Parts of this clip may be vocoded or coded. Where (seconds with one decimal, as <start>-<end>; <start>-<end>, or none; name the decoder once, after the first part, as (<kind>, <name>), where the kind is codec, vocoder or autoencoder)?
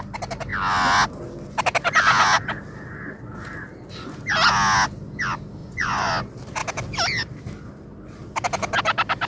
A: 5.6-6.1 (vocoder, Vocos)